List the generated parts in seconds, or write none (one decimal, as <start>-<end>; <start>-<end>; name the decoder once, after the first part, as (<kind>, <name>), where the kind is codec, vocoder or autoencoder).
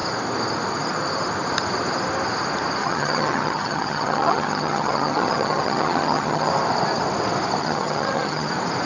2.8-6.5 (vocoder, HiFi-GAN); 7.6-8.5